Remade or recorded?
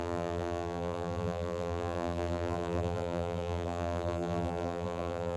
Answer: remade